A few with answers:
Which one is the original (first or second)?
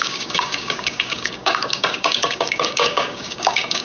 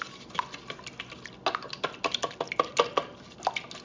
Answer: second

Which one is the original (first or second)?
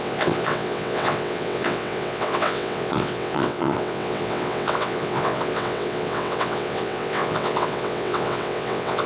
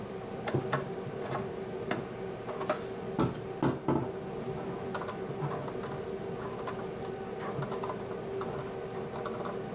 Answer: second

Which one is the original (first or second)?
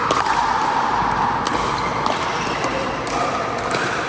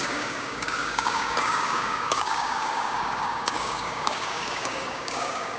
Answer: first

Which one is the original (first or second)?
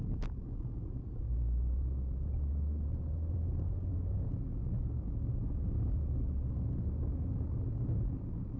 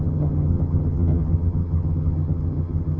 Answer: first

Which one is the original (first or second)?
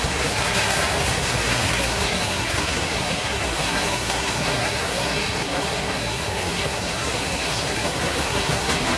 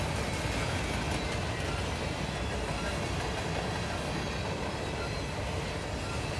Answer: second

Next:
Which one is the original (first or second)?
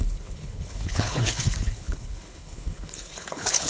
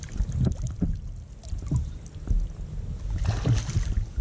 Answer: second